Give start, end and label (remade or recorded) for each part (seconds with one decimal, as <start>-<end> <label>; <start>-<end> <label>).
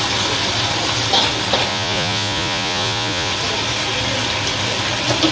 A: 0.0-1.7 recorded; 1.7-3.3 remade; 3.3-5.3 recorded